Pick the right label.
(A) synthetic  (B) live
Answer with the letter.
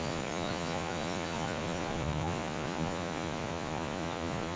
A